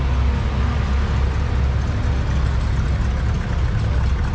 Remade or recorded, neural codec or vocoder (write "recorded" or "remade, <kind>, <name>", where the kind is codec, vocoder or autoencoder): recorded